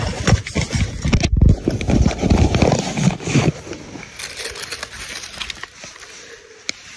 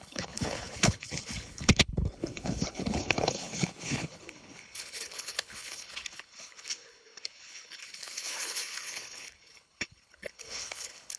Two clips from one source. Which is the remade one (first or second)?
second